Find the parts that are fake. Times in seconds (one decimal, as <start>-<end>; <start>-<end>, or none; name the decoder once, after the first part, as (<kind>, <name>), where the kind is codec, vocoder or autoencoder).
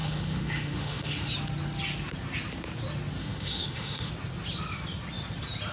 0.0-1.3 (autoencoder, DAC-VAE); 3.2-4.1